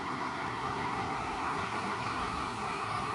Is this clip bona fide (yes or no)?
no